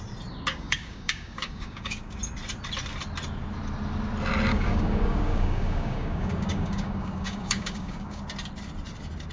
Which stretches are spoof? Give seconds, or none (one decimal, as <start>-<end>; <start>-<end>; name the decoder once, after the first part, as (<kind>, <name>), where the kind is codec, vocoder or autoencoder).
0.5-2.2 (codec, DAC); 4.5-8.2

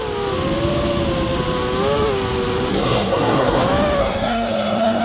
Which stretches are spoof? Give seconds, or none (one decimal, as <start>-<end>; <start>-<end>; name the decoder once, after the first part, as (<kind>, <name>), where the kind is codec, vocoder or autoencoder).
2.7-3.6 (codec, SNAC); 4.0-5.0

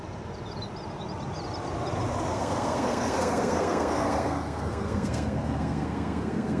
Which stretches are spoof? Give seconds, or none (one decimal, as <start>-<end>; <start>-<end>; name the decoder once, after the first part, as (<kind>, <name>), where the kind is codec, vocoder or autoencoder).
2.3-6.6 (codec, SNAC)